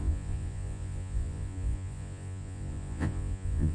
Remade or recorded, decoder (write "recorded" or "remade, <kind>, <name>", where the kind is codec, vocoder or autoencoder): remade, vocoder, Vocos